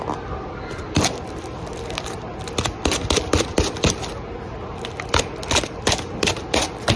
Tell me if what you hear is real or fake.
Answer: real